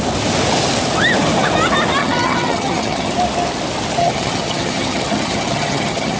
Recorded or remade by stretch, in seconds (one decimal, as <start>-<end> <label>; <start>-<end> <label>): 0.0-2.0 recorded; 2.0-3.1 remade; 3.1-4.0 recorded; 4.0-6.2 remade